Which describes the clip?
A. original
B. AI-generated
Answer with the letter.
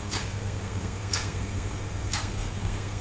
B